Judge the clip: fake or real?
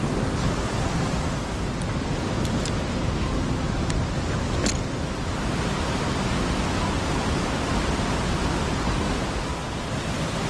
real